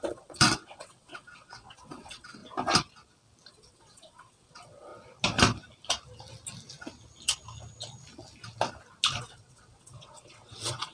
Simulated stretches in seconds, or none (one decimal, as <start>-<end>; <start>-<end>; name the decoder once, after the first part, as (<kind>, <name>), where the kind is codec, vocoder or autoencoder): 0.0-2.4 (vocoder, WaveNeXt); 3.5-4.9; 9.2-10.9